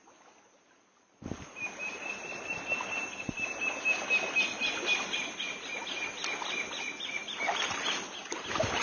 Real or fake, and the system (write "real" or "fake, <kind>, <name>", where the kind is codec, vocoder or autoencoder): real